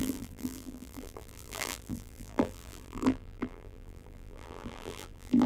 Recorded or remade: remade